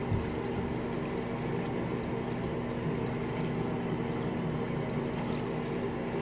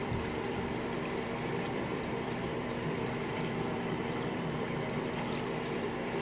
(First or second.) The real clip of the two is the first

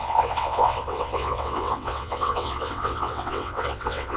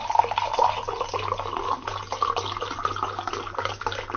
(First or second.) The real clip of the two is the second